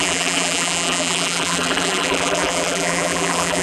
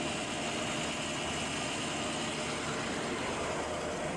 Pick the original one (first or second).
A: second